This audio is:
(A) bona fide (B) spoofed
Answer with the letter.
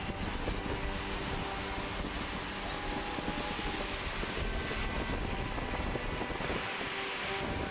A